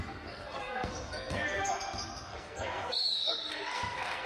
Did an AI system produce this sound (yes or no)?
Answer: yes